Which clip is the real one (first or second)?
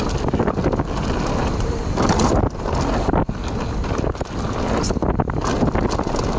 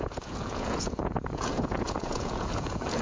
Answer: first